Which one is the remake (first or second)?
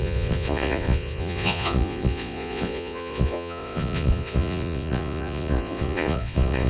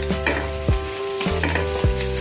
first